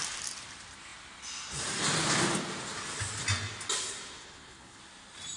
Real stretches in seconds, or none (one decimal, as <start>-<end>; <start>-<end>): 0.0-4.2; 4.8-5.4